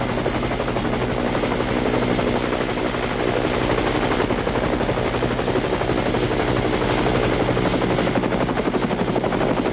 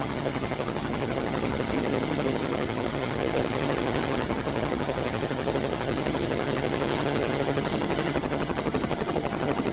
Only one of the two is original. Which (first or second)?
first